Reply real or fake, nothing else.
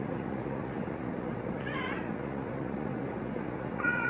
fake